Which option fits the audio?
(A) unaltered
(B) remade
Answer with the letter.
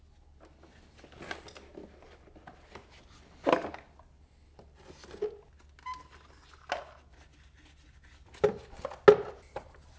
A